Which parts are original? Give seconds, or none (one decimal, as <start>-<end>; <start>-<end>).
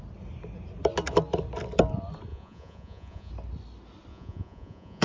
0.0-2.3; 3.3-4.1